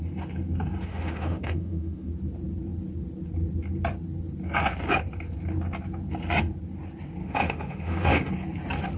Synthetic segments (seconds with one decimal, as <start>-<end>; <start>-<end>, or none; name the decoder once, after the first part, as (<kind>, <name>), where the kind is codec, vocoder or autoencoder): 0.9-2.1 (autoencoder, DAC-VAE); 7.2-8.3